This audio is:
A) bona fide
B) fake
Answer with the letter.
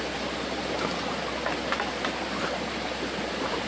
A